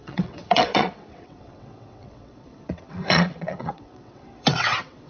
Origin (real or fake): fake